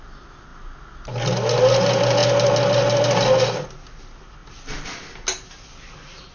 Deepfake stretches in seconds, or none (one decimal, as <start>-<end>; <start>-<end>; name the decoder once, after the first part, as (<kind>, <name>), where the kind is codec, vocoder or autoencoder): none